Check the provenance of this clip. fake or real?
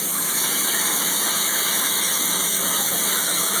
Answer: fake